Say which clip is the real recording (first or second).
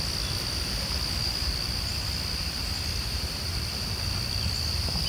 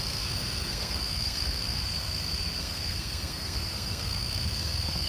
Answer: first